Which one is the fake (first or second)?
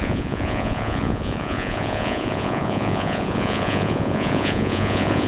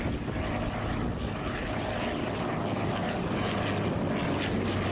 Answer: first